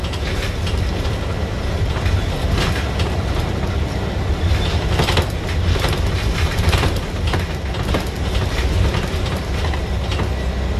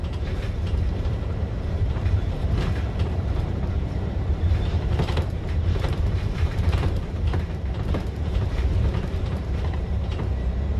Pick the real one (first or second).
first